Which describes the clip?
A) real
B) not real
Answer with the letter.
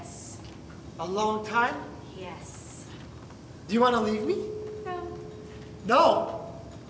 A